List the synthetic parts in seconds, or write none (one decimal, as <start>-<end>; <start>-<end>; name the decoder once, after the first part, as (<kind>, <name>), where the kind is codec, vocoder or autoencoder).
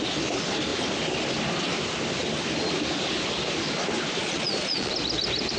4.2-4.9 (vocoder, Vocos)